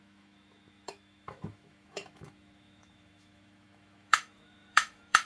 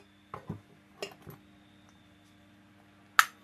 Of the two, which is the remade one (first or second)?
first